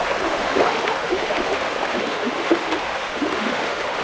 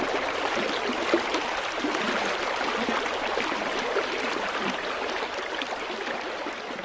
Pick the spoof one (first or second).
first